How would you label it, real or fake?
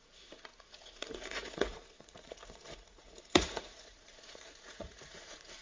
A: fake